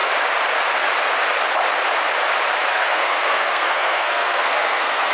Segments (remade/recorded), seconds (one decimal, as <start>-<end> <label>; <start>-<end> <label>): 0.0-2.7 recorded; 2.7-5.1 remade